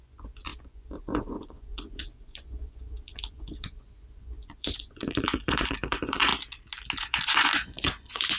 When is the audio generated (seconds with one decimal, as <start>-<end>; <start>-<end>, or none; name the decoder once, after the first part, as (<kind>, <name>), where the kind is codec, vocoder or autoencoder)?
0.0-6.3 (vocoder, Vocos); 7.0-8.4